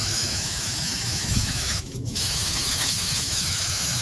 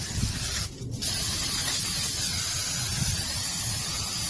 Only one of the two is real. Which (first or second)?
second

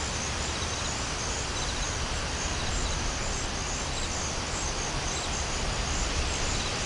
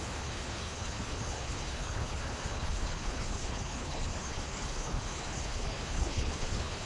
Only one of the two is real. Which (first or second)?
first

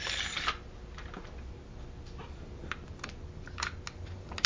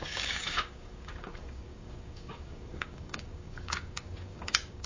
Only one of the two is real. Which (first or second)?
first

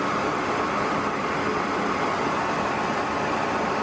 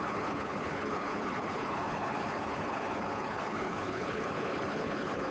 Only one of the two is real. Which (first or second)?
first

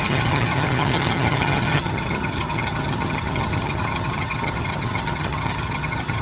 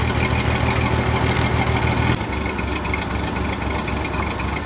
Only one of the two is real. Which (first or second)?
second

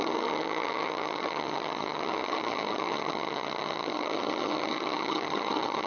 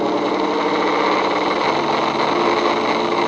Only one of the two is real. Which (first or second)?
second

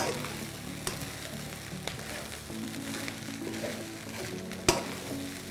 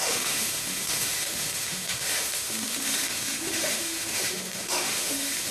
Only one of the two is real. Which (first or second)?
first